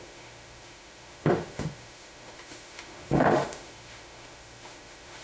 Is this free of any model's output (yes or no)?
no